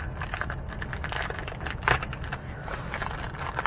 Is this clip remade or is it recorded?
recorded